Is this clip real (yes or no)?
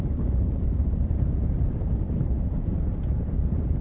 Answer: no